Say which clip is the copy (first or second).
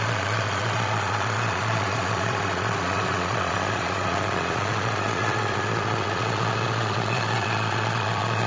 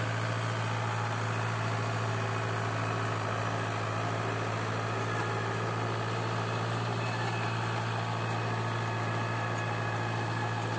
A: first